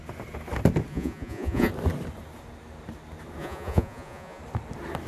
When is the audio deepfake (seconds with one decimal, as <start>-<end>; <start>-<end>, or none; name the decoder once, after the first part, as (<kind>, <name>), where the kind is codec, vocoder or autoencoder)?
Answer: 0.9-1.7 (vocoder, Vocos); 3.4-4.4